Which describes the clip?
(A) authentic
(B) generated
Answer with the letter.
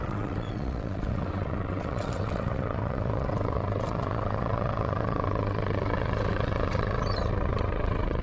B